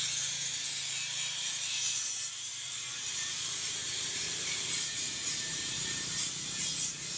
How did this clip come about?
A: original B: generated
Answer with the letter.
B